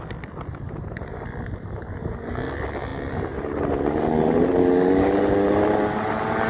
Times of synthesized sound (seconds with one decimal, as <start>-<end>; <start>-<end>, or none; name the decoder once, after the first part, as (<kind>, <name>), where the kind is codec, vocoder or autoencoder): none

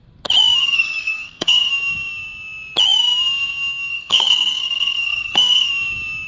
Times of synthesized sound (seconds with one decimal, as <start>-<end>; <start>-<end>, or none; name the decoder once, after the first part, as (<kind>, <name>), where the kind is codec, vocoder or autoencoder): 0.6-1.7 (codec, SNAC); 3.9-5.7

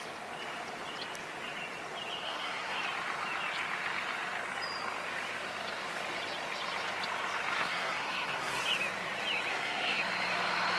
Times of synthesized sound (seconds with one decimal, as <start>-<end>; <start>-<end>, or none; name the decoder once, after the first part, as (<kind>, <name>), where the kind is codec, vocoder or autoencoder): 2.2-2.8 (codec, SNAC); 7.6-8.6; 9.5-10.0

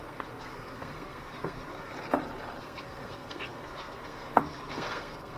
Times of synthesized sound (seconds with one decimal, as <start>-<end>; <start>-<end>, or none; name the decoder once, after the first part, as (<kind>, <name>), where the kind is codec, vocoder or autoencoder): 0.0-1.9 (codec, SNAC); 2.6-5.4